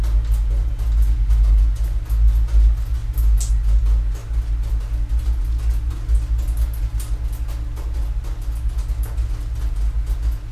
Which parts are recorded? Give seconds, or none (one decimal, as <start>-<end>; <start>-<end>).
0.0-10.5